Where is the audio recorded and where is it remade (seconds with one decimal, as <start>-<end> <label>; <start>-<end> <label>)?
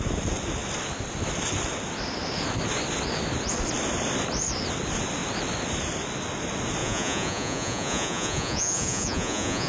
0.0-6.8 recorded; 6.8-9.7 remade